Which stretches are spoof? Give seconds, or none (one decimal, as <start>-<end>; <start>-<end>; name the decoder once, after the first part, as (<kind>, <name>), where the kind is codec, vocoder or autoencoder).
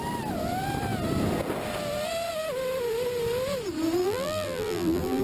4.0-5.2 (vocoder, BigVGAN v2)